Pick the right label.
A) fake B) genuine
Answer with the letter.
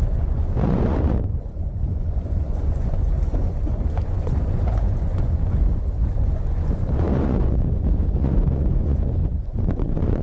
A